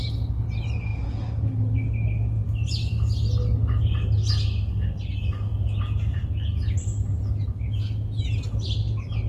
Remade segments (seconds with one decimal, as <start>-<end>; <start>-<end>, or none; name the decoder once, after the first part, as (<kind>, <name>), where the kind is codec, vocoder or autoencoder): none